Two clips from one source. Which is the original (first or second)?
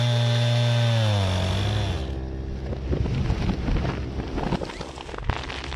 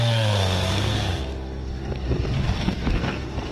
first